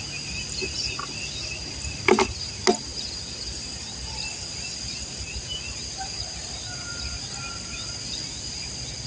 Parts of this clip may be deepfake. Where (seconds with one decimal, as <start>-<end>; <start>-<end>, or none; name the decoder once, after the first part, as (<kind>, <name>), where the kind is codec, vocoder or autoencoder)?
none

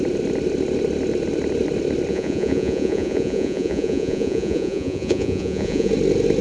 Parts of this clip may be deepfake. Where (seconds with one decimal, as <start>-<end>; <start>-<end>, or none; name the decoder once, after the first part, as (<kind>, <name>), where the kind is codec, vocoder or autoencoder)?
2.1-5.9 (vocoder, Vocos)

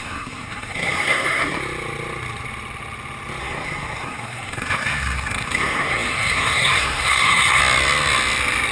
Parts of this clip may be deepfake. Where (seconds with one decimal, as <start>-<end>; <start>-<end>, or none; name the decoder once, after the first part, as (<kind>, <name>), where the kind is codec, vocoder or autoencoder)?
0.0-1.6 (codec, SNAC); 3.4-7.6

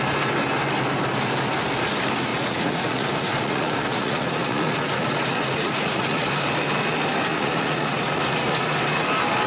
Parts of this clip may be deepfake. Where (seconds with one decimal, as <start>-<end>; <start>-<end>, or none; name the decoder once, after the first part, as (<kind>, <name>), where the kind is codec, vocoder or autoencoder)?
2.3-6.3 (vocoder, Vocos); 7.3-8.8

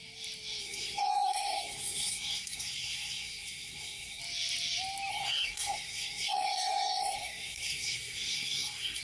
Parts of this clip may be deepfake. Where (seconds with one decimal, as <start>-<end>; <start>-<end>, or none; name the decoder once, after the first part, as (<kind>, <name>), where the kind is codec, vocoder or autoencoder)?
0.6-4.2 (codec, SNAC); 5.1-9.0

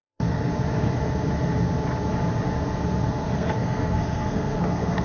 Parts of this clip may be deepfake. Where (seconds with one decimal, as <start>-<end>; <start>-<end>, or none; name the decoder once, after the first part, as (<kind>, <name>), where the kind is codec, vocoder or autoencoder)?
0.0-0.5 (codec, SNAC); 3.1-5.0